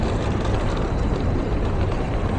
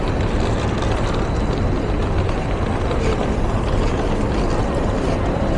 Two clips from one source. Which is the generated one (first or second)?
first